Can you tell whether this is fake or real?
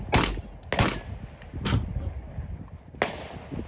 real